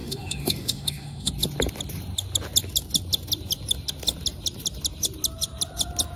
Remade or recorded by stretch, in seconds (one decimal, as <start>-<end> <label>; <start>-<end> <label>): 0.0-1.3 remade; 1.3-6.2 recorded